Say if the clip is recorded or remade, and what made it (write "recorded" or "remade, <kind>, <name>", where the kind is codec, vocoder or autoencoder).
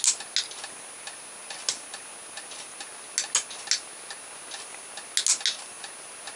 recorded